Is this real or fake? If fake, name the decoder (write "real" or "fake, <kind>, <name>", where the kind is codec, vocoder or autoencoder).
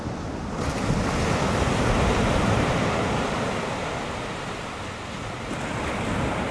real